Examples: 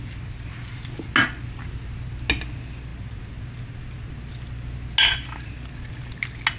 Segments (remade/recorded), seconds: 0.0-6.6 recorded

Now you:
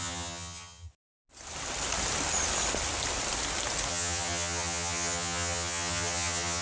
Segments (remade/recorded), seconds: 0.0-0.9 remade; 0.9-3.9 recorded; 3.9-6.6 remade